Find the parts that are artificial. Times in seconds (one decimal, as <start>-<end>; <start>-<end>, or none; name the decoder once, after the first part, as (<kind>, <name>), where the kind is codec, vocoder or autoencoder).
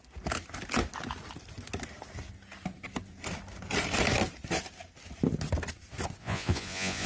6.2-7.1 (vocoder, Vocos)